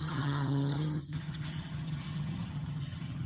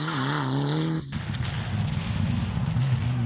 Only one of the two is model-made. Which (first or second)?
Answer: first